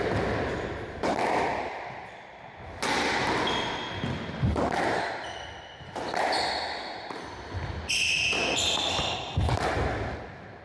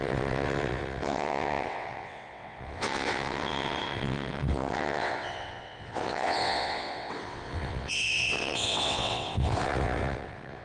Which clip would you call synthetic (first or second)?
second